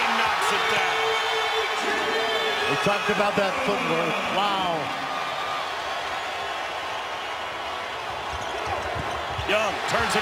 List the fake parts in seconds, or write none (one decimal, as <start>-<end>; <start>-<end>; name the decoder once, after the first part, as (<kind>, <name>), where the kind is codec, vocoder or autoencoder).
none